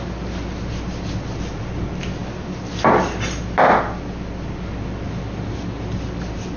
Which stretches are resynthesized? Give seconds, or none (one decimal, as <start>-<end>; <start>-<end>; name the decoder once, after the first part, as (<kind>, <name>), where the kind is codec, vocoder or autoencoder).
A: none

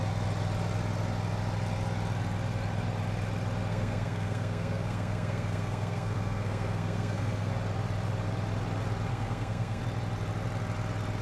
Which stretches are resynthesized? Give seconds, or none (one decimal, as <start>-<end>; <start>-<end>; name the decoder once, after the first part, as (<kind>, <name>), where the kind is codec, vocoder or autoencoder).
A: 3.7-7.5 (codec, SNAC); 9.1-9.8

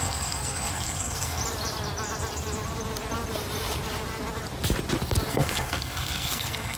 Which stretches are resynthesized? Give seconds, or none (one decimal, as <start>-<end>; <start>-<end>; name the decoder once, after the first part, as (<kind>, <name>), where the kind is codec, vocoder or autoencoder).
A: 0.0-1.4 (codec, SNAC); 5.3-6.8

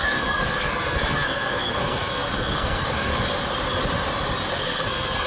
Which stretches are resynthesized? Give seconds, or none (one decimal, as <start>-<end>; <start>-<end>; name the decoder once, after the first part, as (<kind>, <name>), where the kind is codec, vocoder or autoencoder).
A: 0.0-3.1 (codec, SNAC); 4.5-5.3

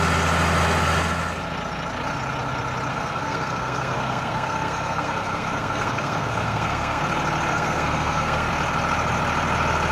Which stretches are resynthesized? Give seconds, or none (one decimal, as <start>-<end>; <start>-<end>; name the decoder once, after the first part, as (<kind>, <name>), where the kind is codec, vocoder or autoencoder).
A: 2.9-7.0 (codec, SNAC); 7.5-8.5

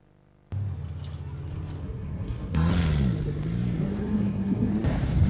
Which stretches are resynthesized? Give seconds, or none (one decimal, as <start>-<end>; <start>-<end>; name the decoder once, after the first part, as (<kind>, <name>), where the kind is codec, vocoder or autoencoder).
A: 1.8-2.7 (codec, SNAC); 4.0-4.7